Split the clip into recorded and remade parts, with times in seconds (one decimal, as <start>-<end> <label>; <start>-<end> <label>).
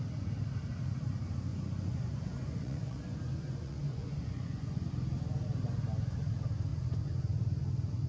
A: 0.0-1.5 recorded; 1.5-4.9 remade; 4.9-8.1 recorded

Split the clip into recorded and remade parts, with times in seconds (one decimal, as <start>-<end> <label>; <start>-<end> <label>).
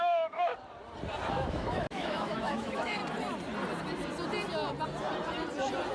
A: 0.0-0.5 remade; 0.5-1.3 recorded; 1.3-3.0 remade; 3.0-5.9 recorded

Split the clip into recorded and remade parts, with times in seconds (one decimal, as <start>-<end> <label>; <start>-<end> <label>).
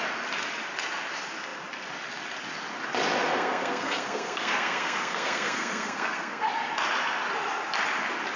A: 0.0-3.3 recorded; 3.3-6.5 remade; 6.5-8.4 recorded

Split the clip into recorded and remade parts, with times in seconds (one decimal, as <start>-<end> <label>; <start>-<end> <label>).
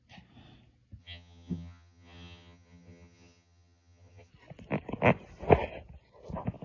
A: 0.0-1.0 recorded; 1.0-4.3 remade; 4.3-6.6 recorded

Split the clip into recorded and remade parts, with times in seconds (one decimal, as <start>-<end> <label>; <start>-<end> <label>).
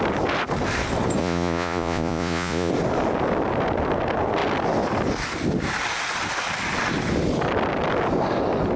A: 0.0-1.2 recorded; 1.2-2.7 remade; 2.7-8.8 recorded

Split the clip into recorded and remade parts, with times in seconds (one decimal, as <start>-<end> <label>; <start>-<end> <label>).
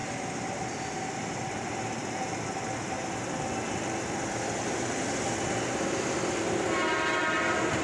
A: 0.0-7.8 recorded